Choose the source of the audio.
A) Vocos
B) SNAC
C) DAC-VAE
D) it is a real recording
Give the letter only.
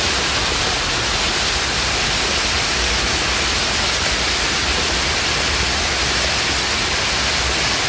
D